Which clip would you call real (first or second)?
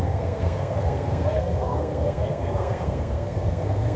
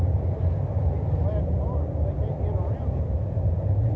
second